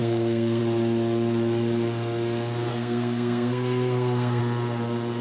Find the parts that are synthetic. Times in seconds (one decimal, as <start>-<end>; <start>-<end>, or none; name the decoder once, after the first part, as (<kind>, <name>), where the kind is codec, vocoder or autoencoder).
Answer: 0.0-0.6 (codec, SNAC); 2.7-4.4